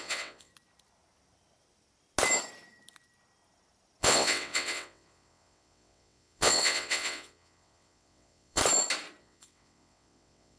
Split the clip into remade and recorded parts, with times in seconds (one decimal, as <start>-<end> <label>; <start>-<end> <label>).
0.0-0.5 remade; 0.5-4.0 recorded; 4.0-8.6 remade; 8.6-9.2 recorded; 9.2-10.6 remade